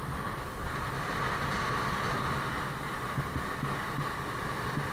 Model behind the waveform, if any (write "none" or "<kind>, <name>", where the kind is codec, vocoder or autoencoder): none